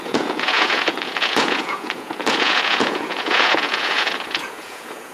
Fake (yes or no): yes